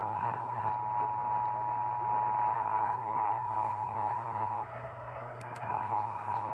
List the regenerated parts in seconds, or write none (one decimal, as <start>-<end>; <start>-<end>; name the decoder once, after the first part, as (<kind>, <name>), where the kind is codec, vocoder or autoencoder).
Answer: 0.0-0.7 (codec, SNAC); 2.5-6.5